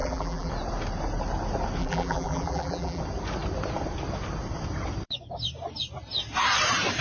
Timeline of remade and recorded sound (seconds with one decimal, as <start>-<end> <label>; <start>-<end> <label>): 0.0-0.5 remade; 0.5-1.8 recorded; 1.8-3.0 remade; 3.0-7.0 recorded